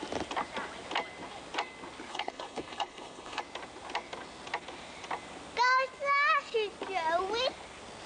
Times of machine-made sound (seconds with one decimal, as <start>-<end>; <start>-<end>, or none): 2.1-3.4